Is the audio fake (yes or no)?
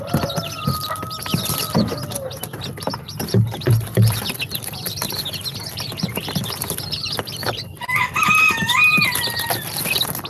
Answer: yes